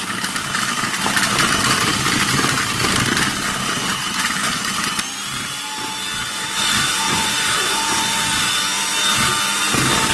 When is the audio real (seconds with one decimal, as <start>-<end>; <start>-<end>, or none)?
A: 0.0-4.4; 5.0-6.2; 8.5-10.1